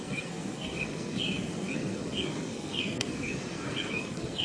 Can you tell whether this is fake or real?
fake